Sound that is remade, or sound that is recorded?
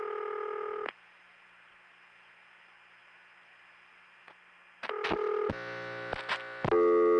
recorded